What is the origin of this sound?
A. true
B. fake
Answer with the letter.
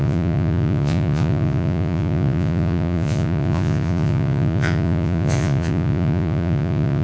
B